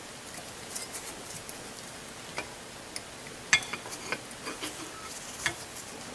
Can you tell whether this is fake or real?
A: real